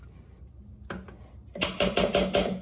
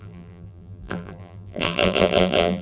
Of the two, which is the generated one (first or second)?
second